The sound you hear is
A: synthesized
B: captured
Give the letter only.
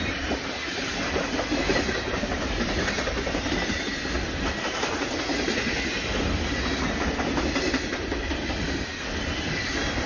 B